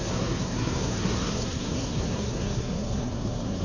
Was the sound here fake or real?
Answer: fake